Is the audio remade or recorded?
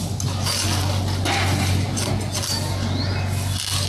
recorded